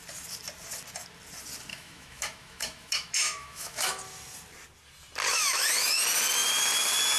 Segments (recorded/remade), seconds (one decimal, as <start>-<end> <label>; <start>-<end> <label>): 0.0-1.7 recorded; 1.7-4.0 remade; 4.0-5.3 recorded; 5.3-6.0 remade; 6.0-7.2 recorded